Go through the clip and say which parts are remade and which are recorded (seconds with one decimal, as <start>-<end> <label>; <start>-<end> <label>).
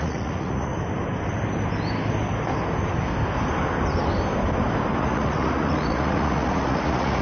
0.0-0.7 remade; 0.7-5.0 recorded; 5.0-7.2 remade